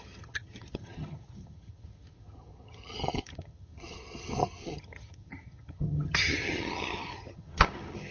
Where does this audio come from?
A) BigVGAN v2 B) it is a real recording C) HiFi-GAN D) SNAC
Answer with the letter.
C